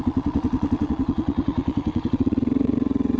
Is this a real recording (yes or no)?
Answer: no